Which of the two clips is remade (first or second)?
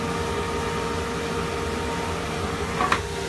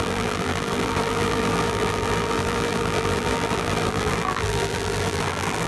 second